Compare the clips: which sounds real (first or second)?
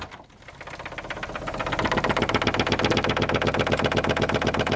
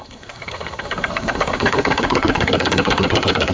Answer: first